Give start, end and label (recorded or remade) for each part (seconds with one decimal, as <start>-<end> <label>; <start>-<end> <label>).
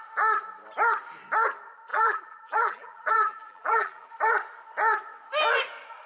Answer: 0.0-1.9 recorded; 1.9-4.1 remade; 4.1-6.1 recorded